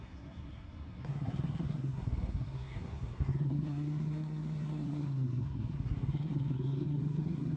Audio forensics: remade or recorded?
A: remade